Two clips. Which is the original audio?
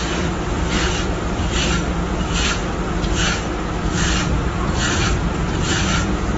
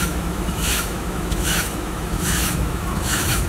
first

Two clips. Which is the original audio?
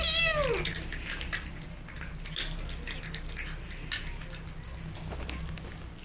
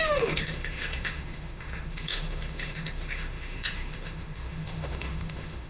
first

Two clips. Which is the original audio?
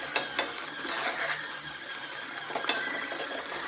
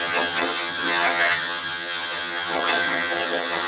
first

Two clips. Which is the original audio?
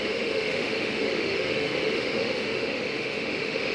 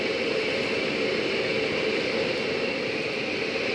second